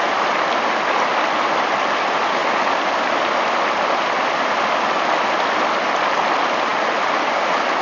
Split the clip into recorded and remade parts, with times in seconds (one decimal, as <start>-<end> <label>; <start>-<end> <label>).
0.0-7.8 recorded